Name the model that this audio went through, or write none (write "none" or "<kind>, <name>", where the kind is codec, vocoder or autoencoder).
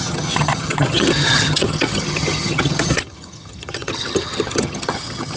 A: vocoder, HiFi-GAN